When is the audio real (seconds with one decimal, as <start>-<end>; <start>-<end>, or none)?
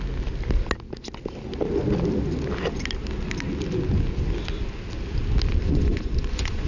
0.0-5.6